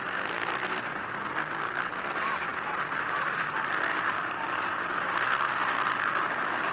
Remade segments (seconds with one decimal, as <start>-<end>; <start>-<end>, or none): none